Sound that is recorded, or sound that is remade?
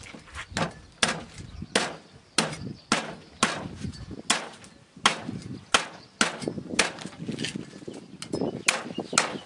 recorded